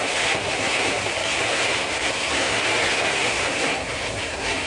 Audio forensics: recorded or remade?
remade